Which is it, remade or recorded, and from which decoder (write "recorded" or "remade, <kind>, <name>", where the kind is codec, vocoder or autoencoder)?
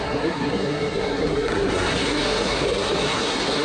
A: remade, codec, SNAC